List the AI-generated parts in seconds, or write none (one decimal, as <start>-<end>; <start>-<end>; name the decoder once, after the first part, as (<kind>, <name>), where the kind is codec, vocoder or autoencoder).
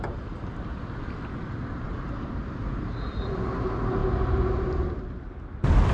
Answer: none